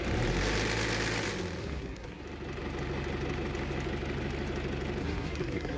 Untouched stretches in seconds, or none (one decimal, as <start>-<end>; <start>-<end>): 0.0-1.6; 2.2-5.0